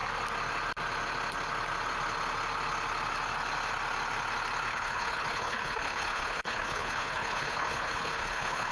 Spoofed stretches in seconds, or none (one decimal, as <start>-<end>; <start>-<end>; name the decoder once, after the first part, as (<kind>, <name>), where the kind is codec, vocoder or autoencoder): 4.7-8.7 (codec, HILCodec)